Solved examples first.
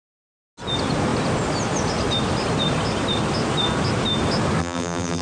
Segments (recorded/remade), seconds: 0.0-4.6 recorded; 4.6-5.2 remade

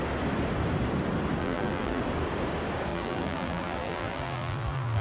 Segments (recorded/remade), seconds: 0.0-1.4 recorded; 1.4-2.0 remade; 2.0-2.9 recorded; 2.9-5.0 remade

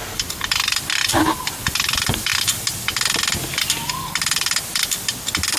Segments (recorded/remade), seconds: 0.0-5.6 recorded

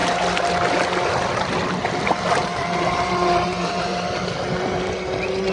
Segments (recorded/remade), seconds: 0.0-2.4 recorded; 2.4-4.0 remade; 4.0-5.5 recorded

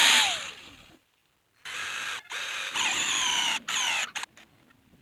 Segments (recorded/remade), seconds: 0.0-0.5 recorded; 0.5-1.2 remade; 1.2-2.4 recorded; 2.4-3.8 remade; 3.8-5.0 recorded

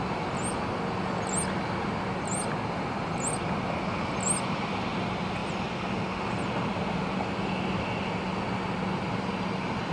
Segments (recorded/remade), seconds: 0.0-9.9 recorded